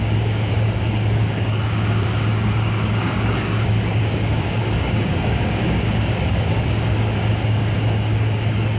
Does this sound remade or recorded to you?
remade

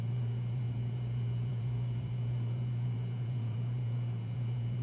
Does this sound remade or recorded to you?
remade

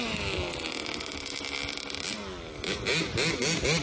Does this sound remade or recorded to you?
recorded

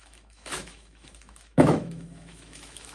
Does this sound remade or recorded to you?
remade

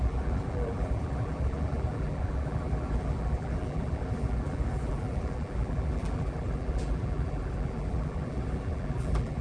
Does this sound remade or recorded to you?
remade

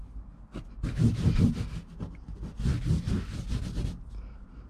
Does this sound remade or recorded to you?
recorded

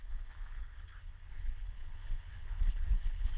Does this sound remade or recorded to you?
remade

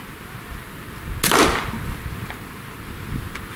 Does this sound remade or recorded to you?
recorded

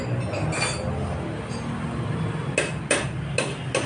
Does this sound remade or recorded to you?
recorded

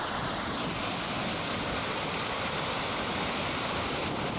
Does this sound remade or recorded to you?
recorded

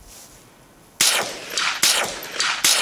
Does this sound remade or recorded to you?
recorded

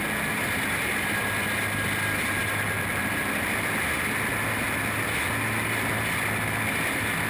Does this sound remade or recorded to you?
recorded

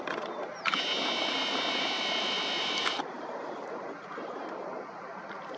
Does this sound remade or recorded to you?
recorded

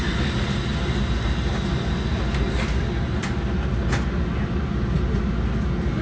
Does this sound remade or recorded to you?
recorded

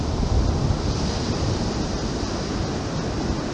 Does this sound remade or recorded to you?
recorded